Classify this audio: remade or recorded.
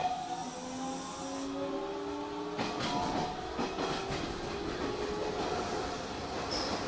recorded